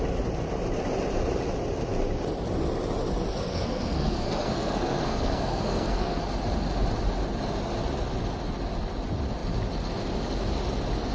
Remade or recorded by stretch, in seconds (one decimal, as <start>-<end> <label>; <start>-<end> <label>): 0.0-3.5 recorded; 3.5-6.2 remade; 6.2-11.1 recorded